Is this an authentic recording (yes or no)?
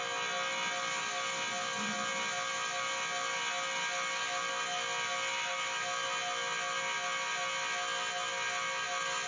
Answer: yes